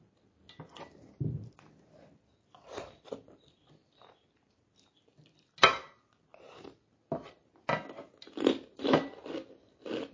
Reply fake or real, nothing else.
real